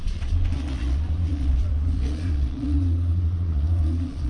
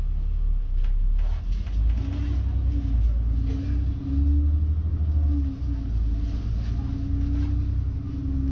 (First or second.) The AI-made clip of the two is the first